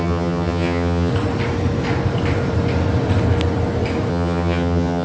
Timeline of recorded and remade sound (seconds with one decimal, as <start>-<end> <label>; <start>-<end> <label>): 0.0-1.1 remade; 1.1-4.1 recorded; 4.1-5.0 remade